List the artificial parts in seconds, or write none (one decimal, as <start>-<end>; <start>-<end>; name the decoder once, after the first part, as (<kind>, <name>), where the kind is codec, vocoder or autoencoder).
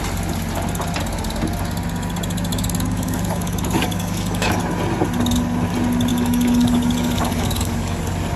2.5-4.6 (codec, DAC); 6.1-8.0